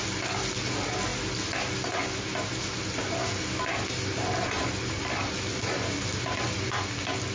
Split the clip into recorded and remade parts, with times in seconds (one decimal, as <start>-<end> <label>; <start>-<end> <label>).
0.0-7.3 recorded